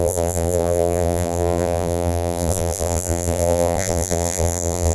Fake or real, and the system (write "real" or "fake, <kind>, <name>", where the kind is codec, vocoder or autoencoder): fake, vocoder, BigVGAN v2